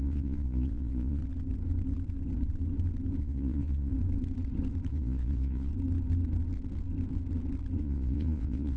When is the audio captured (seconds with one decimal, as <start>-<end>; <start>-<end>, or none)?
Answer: 1.2-3.2; 3.9-4.9; 5.7-7.8